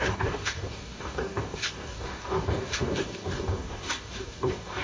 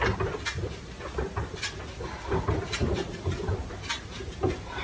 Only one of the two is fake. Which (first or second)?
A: first